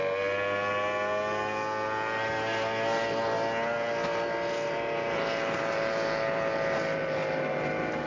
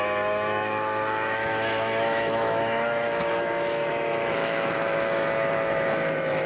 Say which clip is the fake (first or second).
second